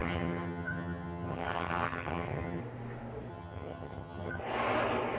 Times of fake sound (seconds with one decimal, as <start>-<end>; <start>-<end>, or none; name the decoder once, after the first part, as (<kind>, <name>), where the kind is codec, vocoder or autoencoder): 0.0-2.6 (vocoder, HiFi-GAN); 3.3-4.4